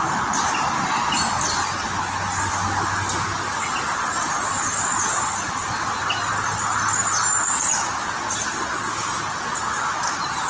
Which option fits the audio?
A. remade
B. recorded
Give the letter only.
B